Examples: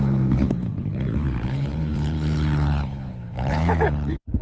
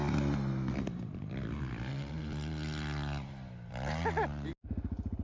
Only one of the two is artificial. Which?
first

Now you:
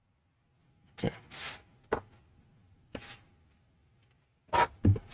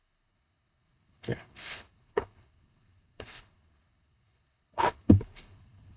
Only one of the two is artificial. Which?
second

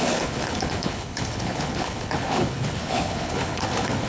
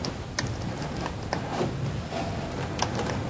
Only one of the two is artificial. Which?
first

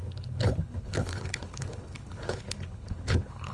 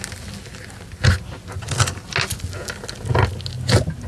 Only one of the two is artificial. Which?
first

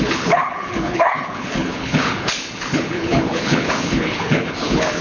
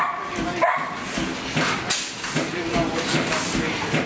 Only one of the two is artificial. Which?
first